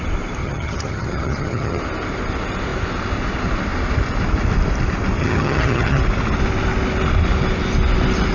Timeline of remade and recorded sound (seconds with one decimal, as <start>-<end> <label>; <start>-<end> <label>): 0.0-0.4 recorded; 0.4-1.8 remade; 1.8-5.2 recorded; 5.2-6.0 remade; 6.0-8.3 recorded